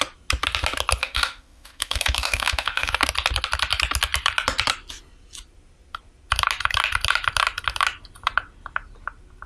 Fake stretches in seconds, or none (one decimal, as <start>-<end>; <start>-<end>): 1.0-2.9